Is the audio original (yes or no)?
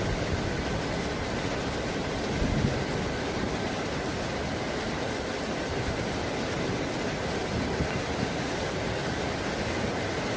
yes